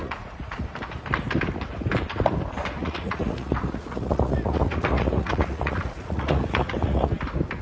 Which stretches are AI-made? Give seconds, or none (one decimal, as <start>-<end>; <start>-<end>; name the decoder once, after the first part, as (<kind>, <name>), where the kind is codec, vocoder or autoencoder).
0.0-0.6 (vocoder, Vocos); 2.8-7.1